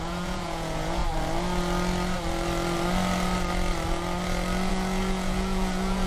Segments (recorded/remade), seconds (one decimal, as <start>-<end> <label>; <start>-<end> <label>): 0.0-1.0 remade; 1.0-4.7 recorded; 4.7-6.1 remade